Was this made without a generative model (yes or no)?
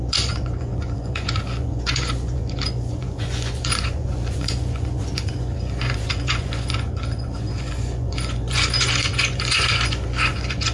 no